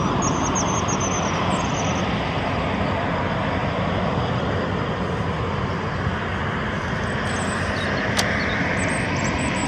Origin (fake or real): real